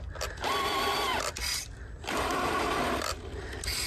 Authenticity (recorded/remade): recorded